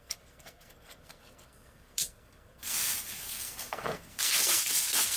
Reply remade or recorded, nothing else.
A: remade